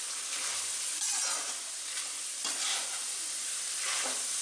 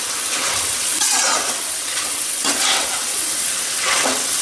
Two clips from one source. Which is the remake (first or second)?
second